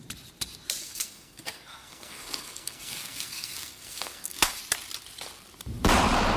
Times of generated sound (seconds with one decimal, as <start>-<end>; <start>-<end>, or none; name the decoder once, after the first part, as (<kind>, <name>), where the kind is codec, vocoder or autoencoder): 0.8-4.6 (codec, SNAC)